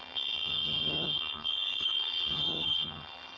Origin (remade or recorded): remade